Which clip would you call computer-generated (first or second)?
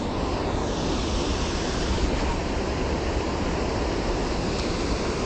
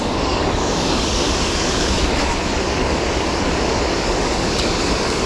second